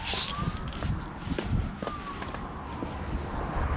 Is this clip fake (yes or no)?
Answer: no